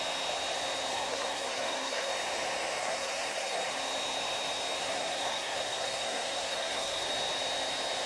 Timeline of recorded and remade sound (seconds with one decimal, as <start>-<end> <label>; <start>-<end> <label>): 0.0-0.9 recorded; 0.9-2.1 remade; 2.1-2.8 recorded; 2.8-3.7 remade; 3.7-4.8 recorded; 4.8-7.1 remade; 7.1-8.1 recorded